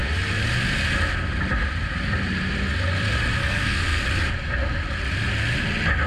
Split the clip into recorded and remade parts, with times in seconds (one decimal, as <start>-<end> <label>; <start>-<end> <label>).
0.0-3.4 recorded; 3.4-4.0 remade; 4.0-6.1 recorded